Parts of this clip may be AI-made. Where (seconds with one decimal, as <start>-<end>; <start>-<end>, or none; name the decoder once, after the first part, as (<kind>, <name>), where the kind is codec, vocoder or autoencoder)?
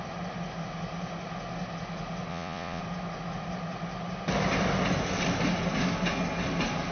2.3-2.8 (vocoder, Vocos)